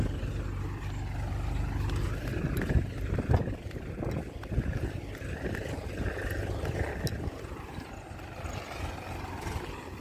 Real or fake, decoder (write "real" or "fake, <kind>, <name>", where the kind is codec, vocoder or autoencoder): real